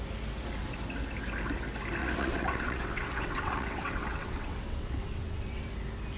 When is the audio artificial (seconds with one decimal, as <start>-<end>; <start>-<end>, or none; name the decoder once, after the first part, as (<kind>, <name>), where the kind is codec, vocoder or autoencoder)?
2.0-5.7 (vocoder, WaveNeXt)